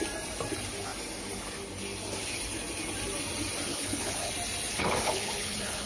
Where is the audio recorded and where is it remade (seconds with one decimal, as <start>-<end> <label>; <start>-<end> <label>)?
0.0-3.7 recorded; 3.7-4.3 remade; 4.3-4.8 recorded; 4.8-5.9 remade